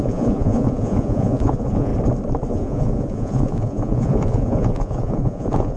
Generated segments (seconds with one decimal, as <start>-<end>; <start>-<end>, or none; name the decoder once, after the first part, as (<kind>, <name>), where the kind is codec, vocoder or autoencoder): 0.0-1.9 (vocoder, Vocos); 2.5-5.8